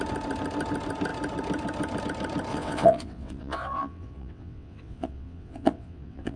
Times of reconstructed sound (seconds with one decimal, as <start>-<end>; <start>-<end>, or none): 2.5-6.4